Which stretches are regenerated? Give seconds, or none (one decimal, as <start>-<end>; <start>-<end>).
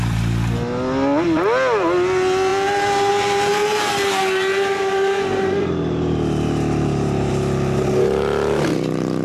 3.6-7.3